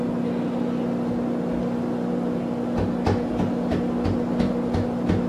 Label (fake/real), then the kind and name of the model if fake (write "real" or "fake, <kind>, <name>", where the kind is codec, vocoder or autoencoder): real